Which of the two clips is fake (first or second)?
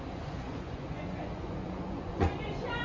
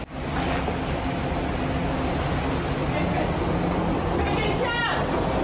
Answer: first